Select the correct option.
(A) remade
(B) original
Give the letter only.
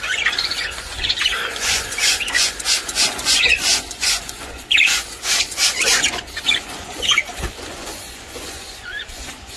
A